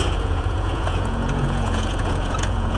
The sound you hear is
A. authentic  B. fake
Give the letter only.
B